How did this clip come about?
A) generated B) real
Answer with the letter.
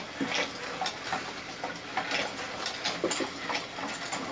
B